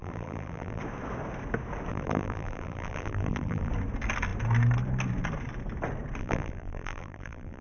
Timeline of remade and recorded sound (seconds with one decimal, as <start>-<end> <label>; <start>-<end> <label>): 0.0-0.8 remade; 0.8-1.9 recorded; 1.9-3.7 remade; 3.7-6.2 recorded; 6.2-7.6 remade